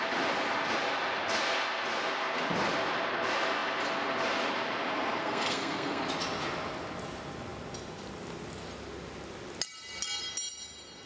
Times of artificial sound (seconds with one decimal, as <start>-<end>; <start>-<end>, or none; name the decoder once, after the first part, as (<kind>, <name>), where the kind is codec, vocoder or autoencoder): 5.2-6.0 (codec, SNAC)

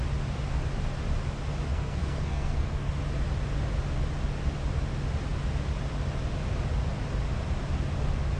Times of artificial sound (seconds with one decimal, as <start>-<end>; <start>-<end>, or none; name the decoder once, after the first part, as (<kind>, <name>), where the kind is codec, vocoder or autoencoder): 1.7-2.9 (codec, SNAC)

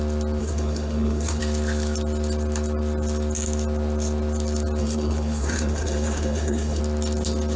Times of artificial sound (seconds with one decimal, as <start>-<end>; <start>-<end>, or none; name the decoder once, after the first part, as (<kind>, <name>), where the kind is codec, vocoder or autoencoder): 0.4-1.4 (codec, SNAC); 4.8-6.8

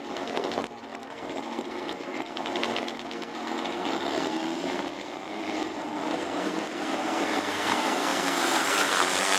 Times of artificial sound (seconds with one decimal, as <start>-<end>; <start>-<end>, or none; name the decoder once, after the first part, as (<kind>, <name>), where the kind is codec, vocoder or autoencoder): 0.0-9.4 (codec, SNAC)

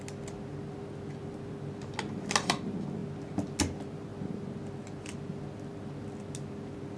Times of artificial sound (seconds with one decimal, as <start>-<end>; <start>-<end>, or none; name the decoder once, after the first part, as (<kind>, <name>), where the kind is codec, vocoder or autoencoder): none